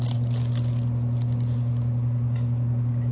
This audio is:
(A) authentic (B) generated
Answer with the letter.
A